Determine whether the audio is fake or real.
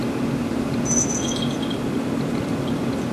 real